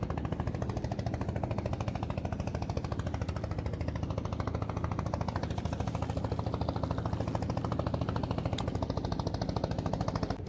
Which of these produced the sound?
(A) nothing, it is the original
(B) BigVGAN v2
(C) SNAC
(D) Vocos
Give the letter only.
A